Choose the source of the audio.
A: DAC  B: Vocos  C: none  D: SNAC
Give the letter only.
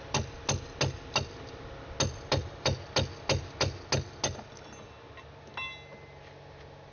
C